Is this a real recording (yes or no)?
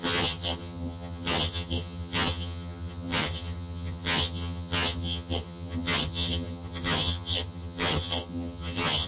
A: no